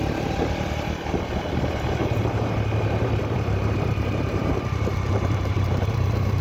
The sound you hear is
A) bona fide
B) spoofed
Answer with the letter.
B